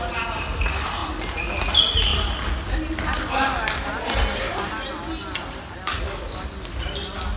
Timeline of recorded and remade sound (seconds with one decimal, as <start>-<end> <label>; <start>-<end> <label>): 0.0-7.4 recorded